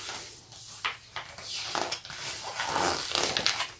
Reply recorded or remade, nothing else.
recorded